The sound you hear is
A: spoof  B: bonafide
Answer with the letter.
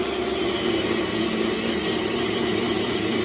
B